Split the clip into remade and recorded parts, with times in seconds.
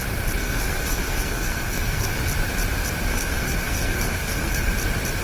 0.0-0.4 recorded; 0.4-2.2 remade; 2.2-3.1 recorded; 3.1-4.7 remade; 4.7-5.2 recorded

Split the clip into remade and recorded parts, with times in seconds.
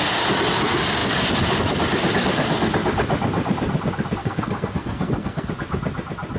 0.0-4.2 recorded; 4.2-5.5 remade; 5.5-6.4 recorded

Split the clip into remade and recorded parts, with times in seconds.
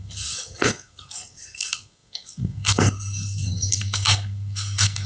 0.0-5.1 remade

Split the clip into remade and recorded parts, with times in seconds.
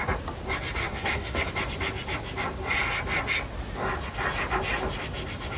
0.0-0.8 recorded; 0.8-1.5 remade; 1.5-5.6 recorded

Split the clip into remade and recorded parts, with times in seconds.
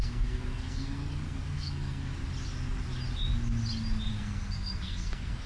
0.0-2.1 remade; 2.1-4.1 recorded; 4.1-5.5 remade